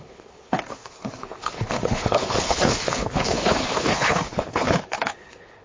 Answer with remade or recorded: remade